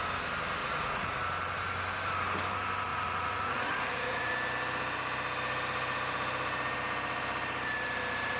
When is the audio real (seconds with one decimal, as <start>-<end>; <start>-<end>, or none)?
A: 0.0-0.6; 1.2-2.9; 4.3-8.4